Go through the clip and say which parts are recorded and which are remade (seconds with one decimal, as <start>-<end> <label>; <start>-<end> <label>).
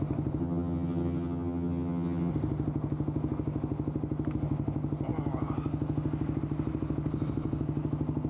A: 0.0-0.4 recorded; 0.4-2.3 remade; 2.3-8.3 recorded